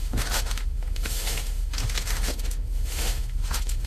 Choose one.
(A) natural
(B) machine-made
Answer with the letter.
B